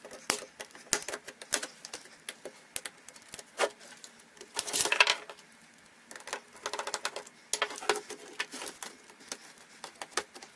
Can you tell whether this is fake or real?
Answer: real